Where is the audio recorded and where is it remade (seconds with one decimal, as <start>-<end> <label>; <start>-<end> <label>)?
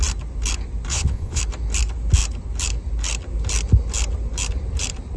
0.0-0.9 recorded; 0.9-1.4 remade; 1.4-5.2 recorded